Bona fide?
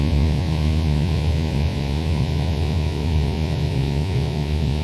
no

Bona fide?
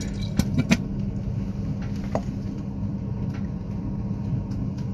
yes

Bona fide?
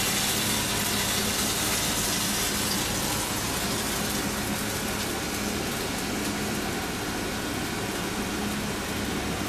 yes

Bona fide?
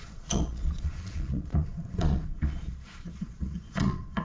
no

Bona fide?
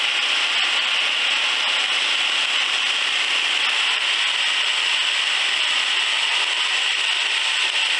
yes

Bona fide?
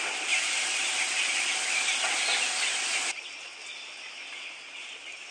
yes